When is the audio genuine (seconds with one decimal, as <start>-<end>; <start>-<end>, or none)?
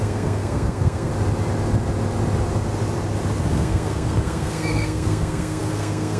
1.1-3.4